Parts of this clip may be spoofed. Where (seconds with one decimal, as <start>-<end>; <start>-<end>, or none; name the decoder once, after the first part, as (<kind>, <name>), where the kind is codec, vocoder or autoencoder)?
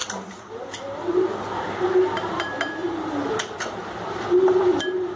0.0-0.5 (vocoder, BigVGAN v2); 2.8-5.2